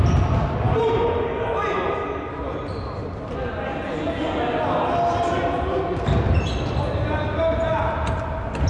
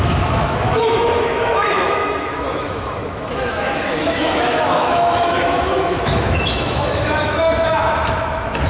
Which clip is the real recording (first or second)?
first